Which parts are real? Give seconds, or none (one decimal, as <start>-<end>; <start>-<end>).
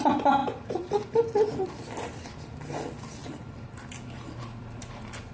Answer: 0.0-0.4; 1.7-3.2; 4.4-5.3